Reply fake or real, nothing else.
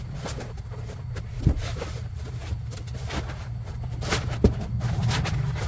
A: real